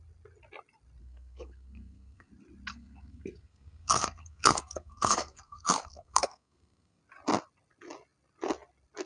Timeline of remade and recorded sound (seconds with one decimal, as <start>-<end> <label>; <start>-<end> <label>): 0.0-1.0 recorded; 1.0-2.3 remade; 2.3-2.7 recorded; 2.7-7.0 remade; 7.0-9.1 recorded